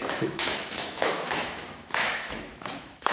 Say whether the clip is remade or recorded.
remade